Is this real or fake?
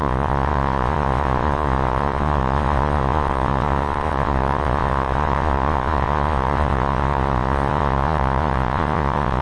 fake